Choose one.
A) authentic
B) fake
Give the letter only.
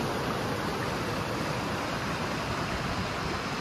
A